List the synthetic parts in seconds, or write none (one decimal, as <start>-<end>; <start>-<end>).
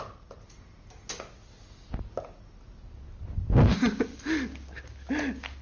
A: none